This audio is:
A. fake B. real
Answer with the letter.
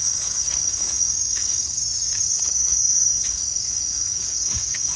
A